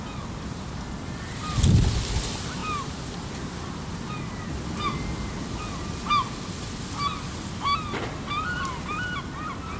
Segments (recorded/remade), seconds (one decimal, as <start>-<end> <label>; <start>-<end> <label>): 0.0-9.8 recorded